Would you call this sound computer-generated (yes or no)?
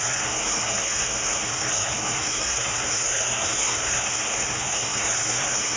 yes